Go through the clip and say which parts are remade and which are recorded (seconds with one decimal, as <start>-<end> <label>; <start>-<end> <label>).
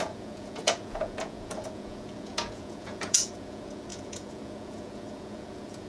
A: 0.0-5.9 remade